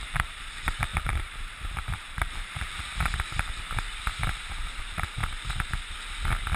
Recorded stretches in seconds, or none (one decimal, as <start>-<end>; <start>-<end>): 2.9-4.8; 5.2-6.6